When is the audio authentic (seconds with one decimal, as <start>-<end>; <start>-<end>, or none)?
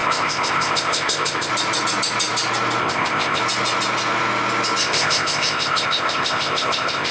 1.5-2.8; 3.4-4.8